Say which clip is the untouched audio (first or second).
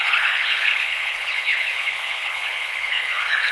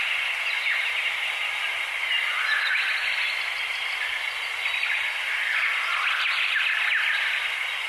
second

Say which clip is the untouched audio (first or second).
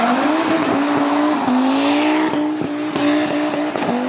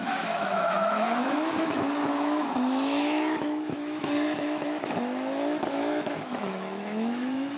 first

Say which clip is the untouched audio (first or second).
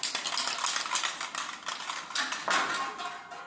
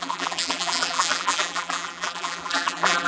first